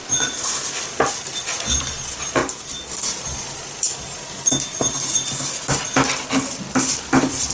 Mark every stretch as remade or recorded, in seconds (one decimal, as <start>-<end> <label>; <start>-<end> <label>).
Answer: 0.0-7.5 recorded